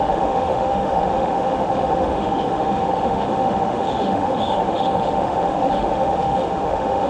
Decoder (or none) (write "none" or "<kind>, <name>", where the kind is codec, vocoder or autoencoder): autoencoder, DAC-VAE